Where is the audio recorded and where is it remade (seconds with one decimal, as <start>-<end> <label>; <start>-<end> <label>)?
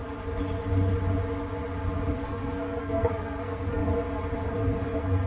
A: 0.0-2.1 recorded; 2.1-3.8 remade; 3.8-4.5 recorded; 4.5-5.3 remade